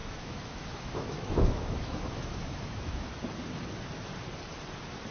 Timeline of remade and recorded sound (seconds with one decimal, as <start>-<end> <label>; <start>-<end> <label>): 0.0-3.1 remade; 3.1-5.1 recorded